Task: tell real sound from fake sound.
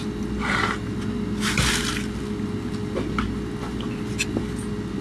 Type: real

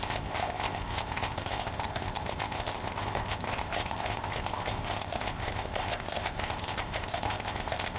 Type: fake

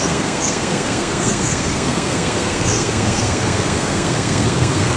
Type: fake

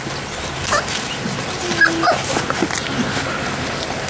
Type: real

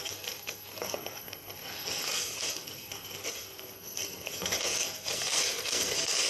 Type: fake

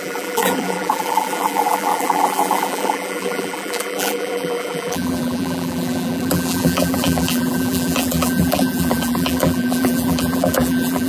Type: fake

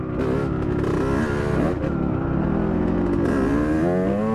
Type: real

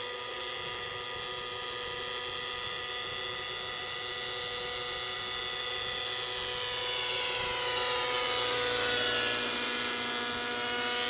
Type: real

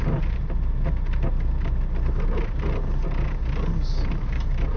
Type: real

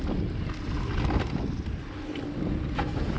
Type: real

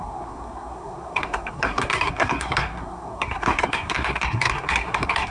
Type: fake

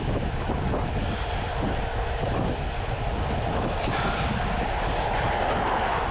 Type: real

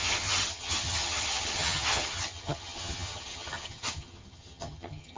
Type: fake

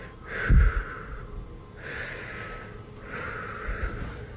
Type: real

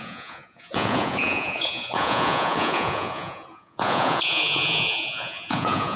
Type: fake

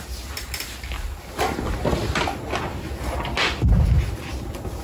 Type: real